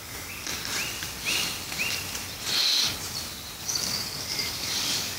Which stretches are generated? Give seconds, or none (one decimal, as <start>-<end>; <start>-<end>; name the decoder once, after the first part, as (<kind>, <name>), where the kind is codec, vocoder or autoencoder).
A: 0.0-0.5 (codec, DAC); 3.6-5.2

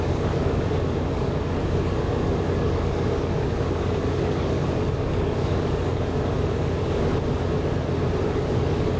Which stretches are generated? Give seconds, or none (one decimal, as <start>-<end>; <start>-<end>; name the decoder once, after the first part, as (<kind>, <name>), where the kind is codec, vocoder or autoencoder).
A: 0.0-7.1 (codec, DAC); 8.2-9.0

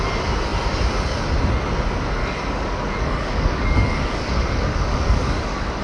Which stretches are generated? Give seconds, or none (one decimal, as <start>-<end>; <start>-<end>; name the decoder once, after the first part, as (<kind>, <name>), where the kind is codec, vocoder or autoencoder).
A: 2.2-5.8 (codec, DAC)

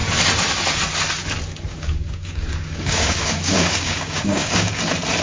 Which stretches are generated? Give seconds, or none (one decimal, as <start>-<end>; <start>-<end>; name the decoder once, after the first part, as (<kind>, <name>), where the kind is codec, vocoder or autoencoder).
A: 1.7-4.8 (codec, DAC)